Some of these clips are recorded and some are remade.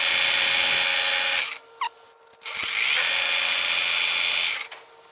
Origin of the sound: recorded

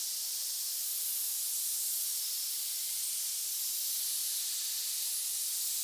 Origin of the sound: recorded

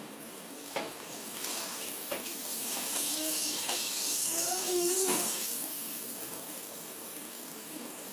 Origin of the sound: remade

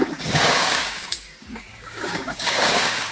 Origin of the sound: remade